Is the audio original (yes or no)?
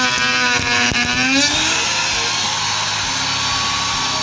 yes